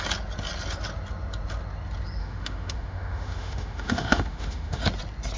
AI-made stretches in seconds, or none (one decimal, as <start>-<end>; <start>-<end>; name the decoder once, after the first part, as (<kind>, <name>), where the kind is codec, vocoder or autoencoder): 2.2-4.8 (autoencoder, DAC-VAE)